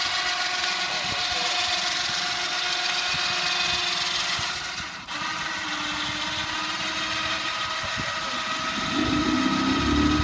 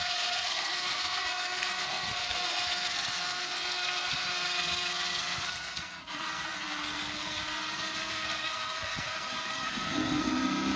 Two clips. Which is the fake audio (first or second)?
second